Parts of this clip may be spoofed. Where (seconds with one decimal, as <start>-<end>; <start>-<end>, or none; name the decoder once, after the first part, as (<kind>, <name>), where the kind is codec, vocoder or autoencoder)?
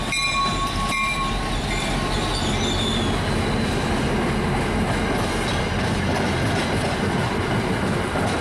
0.0-2.3 (vocoder, BigVGAN v2); 7.0-8.4